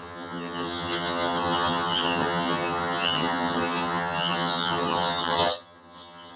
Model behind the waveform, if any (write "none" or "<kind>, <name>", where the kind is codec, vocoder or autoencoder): vocoder, HiFi-GAN